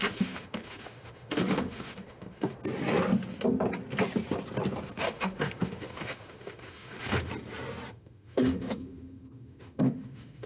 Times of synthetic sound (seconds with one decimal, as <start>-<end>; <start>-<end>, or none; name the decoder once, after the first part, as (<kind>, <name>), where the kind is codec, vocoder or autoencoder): 0.0-2.6 (autoencoder, DAC-VAE); 5.0-7.3; 7.9-10.5